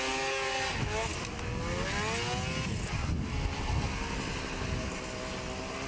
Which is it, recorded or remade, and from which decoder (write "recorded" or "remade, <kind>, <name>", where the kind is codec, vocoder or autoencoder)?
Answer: recorded